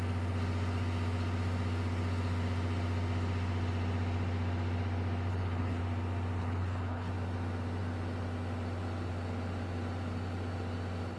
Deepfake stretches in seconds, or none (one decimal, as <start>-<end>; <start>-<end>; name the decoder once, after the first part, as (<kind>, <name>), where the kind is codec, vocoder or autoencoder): 5.3-5.8 (codec, HILCodec); 6.4-7.1